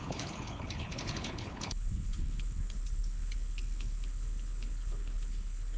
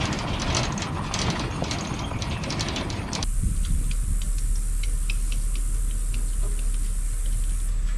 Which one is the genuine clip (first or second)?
second